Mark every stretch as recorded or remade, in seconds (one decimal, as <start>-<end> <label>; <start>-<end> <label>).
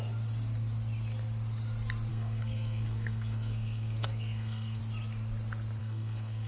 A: 0.0-2.1 recorded; 2.1-4.8 remade; 4.8-5.8 recorded; 5.8-6.5 remade